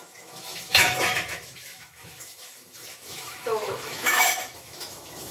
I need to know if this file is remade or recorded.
remade